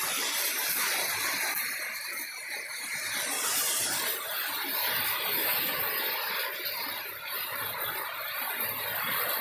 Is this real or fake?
real